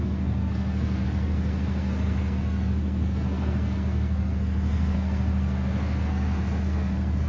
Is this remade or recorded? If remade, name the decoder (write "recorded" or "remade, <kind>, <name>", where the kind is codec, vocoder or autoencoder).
remade, codec, SNAC